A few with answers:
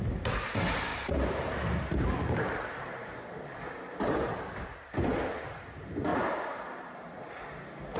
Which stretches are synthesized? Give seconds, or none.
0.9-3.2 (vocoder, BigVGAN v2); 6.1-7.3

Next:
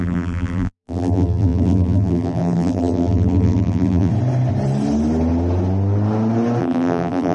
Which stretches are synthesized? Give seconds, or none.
0.0-4.1 (vocoder, BigVGAN v2); 6.6-7.3

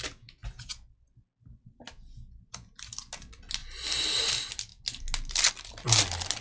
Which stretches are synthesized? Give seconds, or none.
none

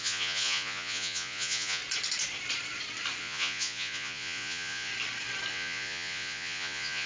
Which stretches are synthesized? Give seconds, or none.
0.0-1.8 (vocoder, Vocos); 3.2-4.9; 5.5-7.1

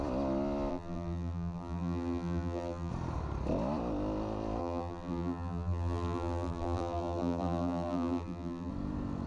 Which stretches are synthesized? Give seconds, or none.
0.7-2.9 (vocoder, BigVGAN v2); 4.6-8.7